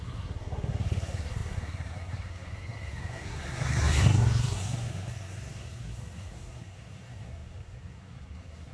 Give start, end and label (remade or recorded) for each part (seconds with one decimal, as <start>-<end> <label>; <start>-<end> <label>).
0.0-8.7 remade